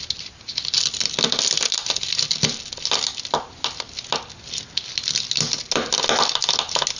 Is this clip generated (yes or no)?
no